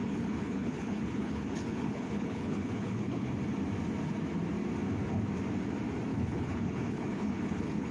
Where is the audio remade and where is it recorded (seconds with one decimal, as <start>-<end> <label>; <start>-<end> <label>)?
0.0-3.3 remade; 3.3-6.1 recorded; 6.1-7.9 remade